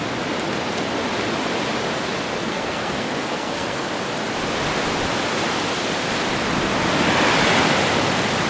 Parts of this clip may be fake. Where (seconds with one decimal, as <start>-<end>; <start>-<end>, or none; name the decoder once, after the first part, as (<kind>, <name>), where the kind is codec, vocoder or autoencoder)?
2.5-3.9 (codec, SNAC)